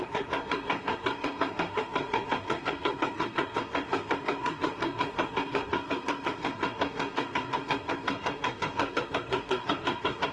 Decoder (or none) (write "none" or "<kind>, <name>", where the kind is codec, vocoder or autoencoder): codec, SNAC